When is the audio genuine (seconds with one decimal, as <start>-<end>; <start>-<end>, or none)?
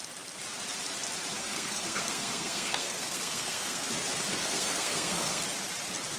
0.0-1.4; 3.9-4.3; 5.4-6.2